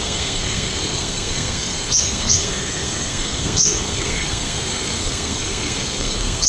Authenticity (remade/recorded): remade